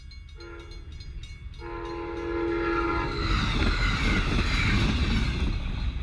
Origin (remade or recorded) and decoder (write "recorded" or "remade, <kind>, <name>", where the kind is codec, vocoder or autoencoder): recorded